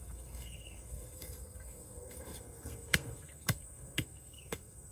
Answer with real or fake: fake